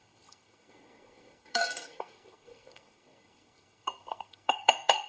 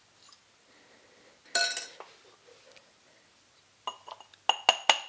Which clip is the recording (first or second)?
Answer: second